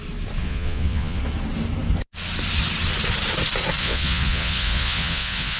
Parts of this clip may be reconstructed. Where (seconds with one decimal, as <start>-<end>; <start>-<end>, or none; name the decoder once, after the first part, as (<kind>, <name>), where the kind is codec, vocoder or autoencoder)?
0.4-1.2 (vocoder, Vocos); 3.8-5.6